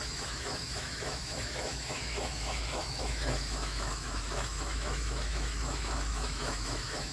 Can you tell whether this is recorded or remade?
remade